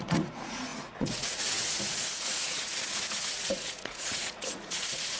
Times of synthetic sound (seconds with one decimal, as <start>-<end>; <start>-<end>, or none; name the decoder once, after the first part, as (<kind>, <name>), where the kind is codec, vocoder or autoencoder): 0.0-5.2 (vocoder, Vocos)